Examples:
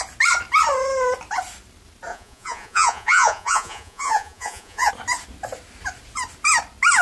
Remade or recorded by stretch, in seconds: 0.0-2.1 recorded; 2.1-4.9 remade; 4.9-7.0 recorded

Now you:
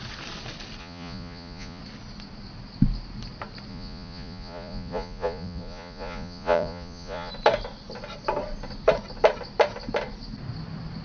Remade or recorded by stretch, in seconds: 0.0-0.8 recorded; 0.8-1.8 remade; 1.8-3.7 recorded; 3.7-7.3 remade; 7.3-11.0 recorded

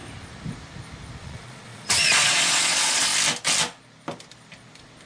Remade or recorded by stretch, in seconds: 0.0-1.2 recorded; 1.2-3.1 remade; 3.1-5.1 recorded

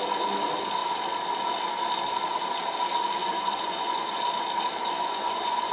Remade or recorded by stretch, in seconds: 0.0-3.2 recorded; 3.2-4.2 remade; 4.2-4.8 recorded; 4.8-5.7 remade